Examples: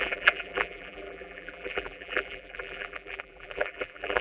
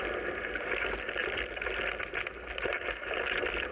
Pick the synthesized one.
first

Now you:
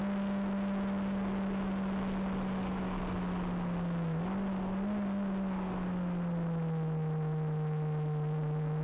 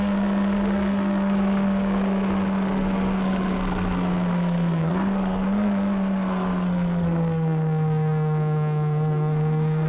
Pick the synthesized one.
second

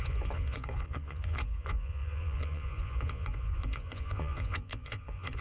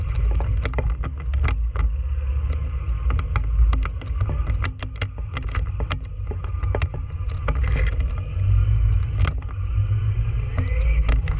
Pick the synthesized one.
first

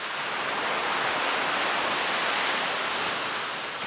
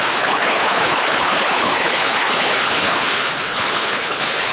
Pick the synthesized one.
second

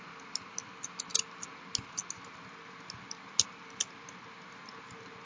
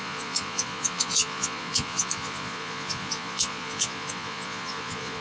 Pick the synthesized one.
second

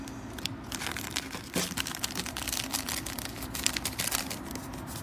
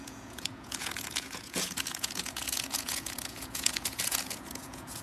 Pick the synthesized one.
second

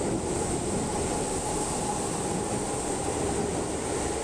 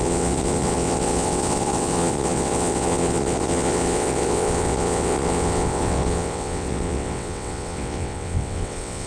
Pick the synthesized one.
second